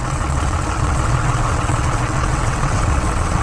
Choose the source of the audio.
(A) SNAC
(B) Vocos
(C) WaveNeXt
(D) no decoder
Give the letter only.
C